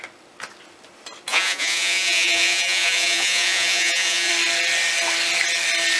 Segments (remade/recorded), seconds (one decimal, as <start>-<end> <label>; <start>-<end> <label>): 0.0-1.3 recorded; 1.3-4.3 remade; 4.3-6.0 recorded